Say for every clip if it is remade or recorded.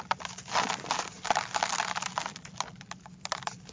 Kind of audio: recorded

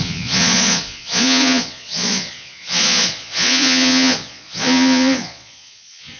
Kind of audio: remade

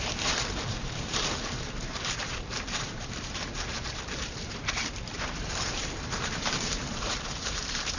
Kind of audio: remade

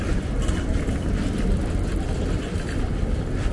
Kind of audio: recorded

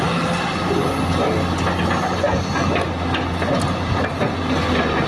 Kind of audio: recorded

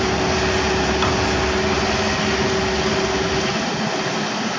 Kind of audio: recorded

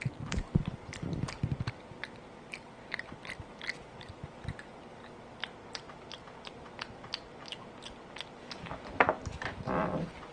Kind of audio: recorded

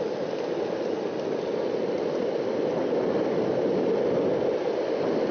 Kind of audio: recorded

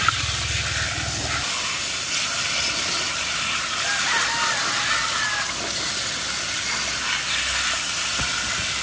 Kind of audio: recorded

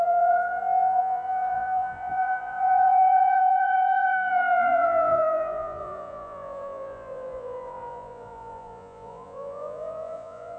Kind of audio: remade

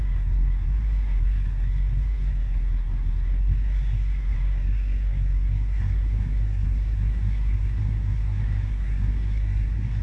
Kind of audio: remade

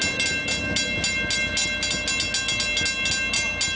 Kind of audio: recorded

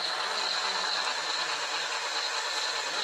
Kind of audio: recorded